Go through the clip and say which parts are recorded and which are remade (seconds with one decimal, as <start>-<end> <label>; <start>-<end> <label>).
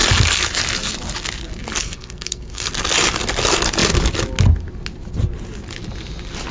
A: 0.0-1.8 recorded; 1.8-2.7 remade; 2.7-6.5 recorded